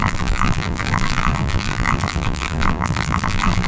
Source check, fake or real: fake